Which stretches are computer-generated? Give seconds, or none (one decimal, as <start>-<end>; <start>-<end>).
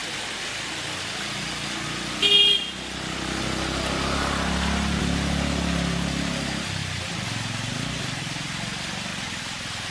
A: none